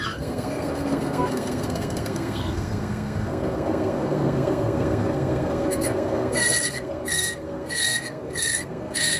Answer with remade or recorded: remade